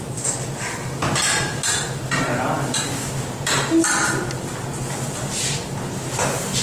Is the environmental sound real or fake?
real